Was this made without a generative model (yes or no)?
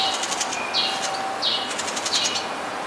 yes